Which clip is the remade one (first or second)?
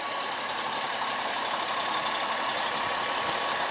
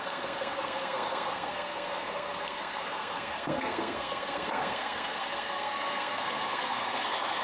second